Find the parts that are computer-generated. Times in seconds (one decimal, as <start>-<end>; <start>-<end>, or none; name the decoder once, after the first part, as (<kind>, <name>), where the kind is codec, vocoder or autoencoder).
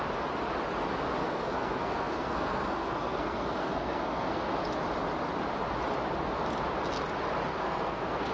1.2-4.5 (codec, SNAC); 7.5-8.3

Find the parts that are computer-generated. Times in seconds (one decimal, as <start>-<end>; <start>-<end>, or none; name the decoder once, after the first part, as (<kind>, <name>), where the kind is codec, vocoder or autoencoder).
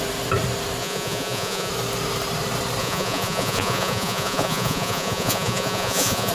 0.8-1.7 (vocoder, Vocos); 2.8-6.3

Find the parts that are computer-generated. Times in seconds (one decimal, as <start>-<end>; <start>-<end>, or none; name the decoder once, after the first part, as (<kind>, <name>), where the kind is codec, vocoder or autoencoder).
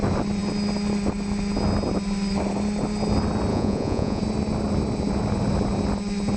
3.5-4.2 (vocoder, Vocos)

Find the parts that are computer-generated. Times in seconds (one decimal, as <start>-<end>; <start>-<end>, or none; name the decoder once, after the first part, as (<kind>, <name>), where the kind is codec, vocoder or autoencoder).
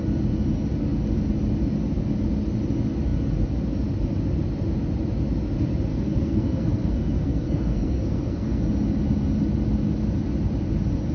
5.9-8.7 (codec, SNAC)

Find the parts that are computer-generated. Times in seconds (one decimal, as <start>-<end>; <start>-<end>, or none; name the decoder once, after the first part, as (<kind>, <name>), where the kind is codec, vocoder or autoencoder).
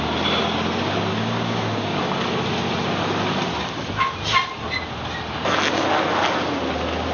1.1-2.0 (codec, DAC)